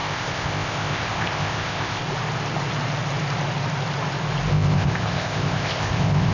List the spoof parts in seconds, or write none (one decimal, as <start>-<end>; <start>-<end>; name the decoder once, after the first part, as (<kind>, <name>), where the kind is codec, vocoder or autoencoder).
0.0-2.0 (codec, ZipCodec); 4.5-6.3